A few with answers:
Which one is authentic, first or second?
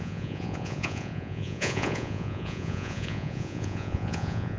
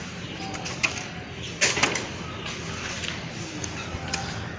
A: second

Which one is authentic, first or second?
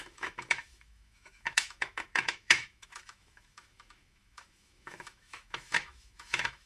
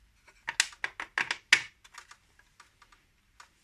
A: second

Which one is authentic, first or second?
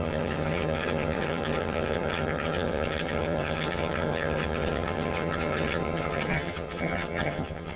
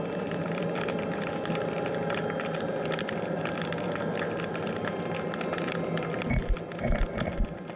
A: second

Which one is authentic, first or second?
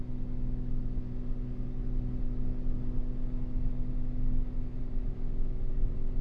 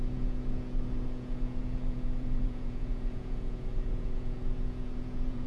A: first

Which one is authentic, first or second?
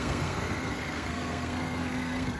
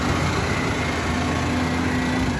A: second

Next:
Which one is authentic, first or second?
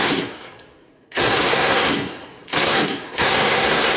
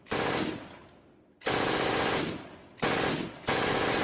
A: second